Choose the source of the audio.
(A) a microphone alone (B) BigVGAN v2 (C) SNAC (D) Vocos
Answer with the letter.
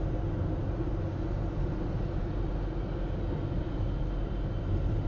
A